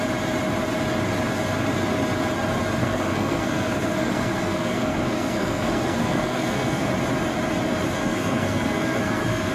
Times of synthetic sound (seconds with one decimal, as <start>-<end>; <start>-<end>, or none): 2.8-6.9; 8.0-9.5